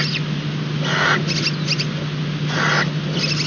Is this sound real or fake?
real